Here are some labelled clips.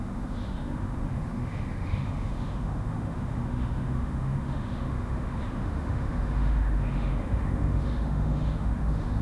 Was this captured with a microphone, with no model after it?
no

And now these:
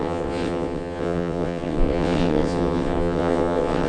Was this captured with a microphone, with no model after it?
no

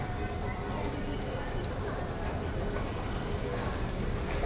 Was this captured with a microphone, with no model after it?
no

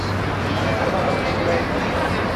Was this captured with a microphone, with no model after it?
yes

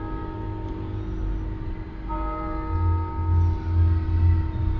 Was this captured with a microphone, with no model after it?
yes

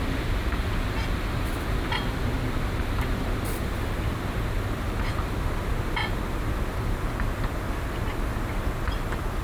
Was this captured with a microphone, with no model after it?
yes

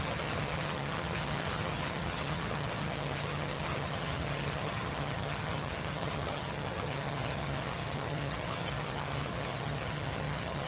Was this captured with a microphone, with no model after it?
no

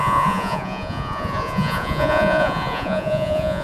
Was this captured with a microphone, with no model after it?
no